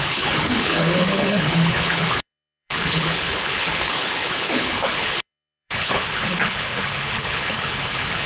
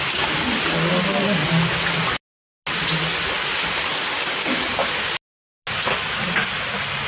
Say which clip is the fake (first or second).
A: first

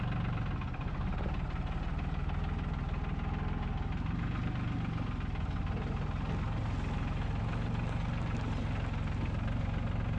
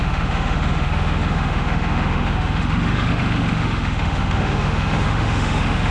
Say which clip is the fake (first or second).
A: second